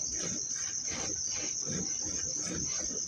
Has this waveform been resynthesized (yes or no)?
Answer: yes